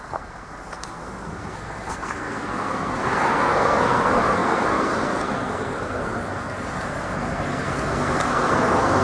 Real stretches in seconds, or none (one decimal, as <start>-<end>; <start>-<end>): none